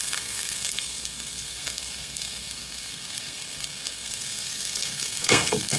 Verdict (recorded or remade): remade